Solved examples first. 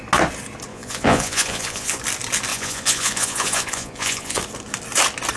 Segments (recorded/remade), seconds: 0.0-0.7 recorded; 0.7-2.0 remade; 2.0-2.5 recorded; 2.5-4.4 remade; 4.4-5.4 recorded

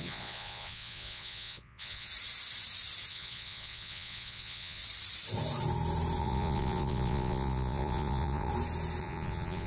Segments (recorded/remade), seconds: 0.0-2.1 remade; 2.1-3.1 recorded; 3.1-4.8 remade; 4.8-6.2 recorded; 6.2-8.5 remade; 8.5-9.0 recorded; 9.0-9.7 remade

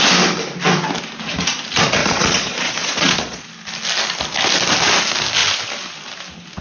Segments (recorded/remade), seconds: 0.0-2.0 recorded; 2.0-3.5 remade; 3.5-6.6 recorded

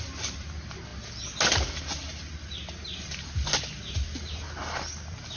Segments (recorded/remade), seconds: 0.0-5.4 recorded

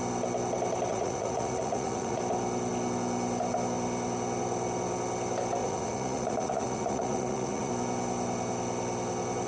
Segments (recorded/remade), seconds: 0.0-0.9 recorded; 0.9-2.2 remade; 2.2-5.6 recorded; 5.6-7.7 remade; 7.7-9.5 recorded

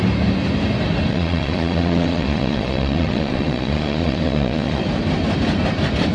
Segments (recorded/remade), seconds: 0.0-1.1 recorded; 1.1-4.8 remade; 4.8-6.1 recorded

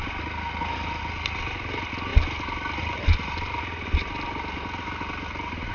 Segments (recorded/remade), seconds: 0.0-5.7 recorded

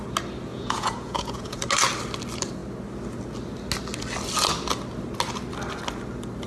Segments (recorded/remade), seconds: 0.0-0.5 recorded; 0.5-1.6 remade; 1.6-6.5 recorded